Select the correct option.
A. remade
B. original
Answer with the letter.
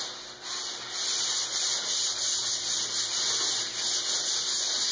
B